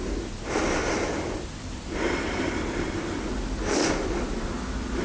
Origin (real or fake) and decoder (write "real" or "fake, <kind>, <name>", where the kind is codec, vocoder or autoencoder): real